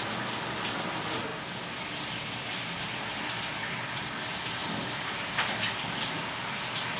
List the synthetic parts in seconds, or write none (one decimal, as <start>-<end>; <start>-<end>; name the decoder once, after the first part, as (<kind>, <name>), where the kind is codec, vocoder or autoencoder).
none